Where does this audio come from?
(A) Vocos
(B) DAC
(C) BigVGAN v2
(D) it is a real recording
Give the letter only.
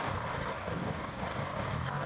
B